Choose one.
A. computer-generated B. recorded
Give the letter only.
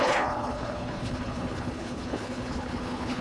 A